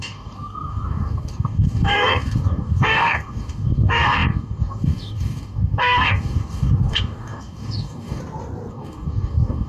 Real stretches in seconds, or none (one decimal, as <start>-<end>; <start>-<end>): 8.2-8.7